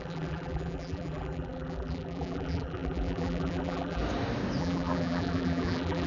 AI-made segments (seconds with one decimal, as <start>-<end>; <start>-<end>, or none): 0.0-4.0; 4.6-6.1